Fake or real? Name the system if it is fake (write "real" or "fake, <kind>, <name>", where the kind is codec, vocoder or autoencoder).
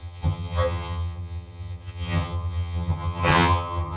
fake, vocoder, HiFi-GAN